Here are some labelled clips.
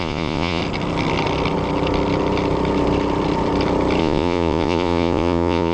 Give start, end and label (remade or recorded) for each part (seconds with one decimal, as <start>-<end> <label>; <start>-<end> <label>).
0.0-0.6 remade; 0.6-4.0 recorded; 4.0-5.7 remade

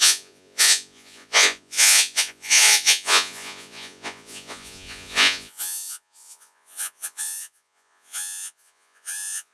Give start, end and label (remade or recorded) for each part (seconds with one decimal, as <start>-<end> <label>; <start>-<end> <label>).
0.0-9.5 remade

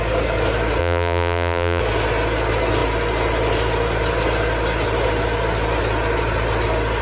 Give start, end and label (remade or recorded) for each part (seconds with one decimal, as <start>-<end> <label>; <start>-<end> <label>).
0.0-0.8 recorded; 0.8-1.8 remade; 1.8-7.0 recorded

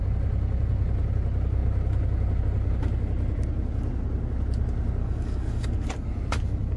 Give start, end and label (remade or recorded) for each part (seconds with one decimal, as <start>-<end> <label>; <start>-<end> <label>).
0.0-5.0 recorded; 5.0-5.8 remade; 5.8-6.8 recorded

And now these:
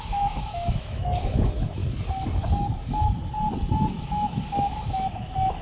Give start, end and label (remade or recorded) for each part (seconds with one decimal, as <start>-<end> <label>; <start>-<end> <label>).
0.0-1.8 remade; 1.8-3.7 recorded; 3.7-5.6 remade